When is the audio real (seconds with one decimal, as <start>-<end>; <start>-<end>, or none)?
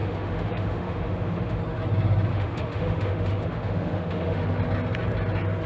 1.6-2.3; 4.6-5.7